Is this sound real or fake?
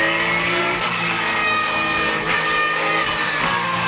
fake